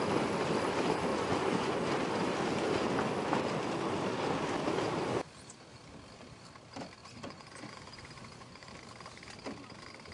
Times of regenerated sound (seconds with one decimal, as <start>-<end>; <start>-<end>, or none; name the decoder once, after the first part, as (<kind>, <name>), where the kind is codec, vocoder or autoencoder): 1.1-1.8 (vocoder, Vocos); 7.0-8.7